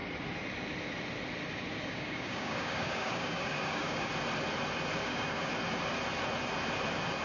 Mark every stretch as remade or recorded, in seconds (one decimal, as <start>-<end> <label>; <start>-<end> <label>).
0.0-1.8 recorded; 1.8-4.1 remade; 4.1-5.0 recorded; 5.0-5.5 remade; 5.5-7.2 recorded